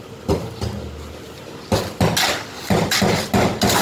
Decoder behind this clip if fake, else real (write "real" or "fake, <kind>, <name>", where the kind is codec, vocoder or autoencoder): real